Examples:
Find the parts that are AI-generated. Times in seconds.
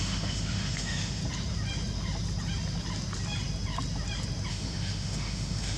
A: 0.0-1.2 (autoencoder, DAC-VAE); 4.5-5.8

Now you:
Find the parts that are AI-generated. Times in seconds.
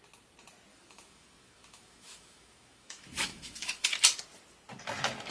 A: 0.7-3.9 (autoencoder, DAC-VAE)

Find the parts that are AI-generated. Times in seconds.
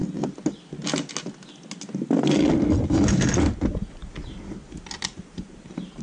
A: none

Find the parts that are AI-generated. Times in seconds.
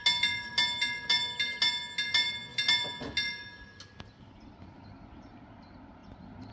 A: none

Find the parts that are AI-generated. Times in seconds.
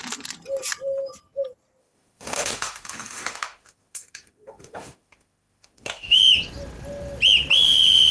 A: 1.8-6.2 (autoencoder, DAC-VAE)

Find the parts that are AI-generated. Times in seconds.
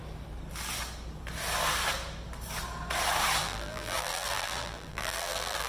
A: 3.4-5.7 (vocoder, BigVGAN v2)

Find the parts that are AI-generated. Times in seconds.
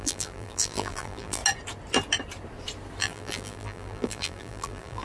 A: 0.0-1.4 (vocoder, BigVGAN v2); 3.0-5.0